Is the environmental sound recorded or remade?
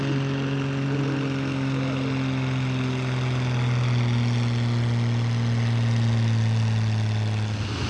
recorded